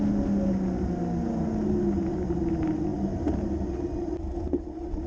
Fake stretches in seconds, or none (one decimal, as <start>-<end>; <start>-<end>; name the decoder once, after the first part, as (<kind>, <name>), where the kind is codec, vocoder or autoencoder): none